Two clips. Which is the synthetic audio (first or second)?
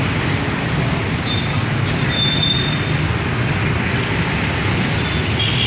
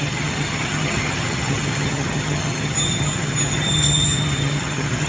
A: second